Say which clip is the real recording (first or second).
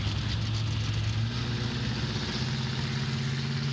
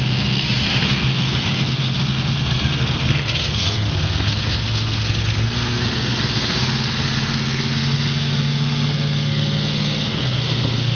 first